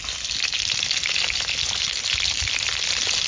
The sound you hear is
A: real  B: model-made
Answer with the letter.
A